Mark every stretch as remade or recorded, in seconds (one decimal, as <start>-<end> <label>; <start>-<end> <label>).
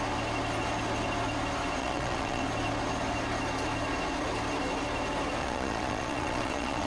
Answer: 0.0-1.8 recorded; 1.8-2.4 remade; 2.4-5.4 recorded; 5.4-6.9 remade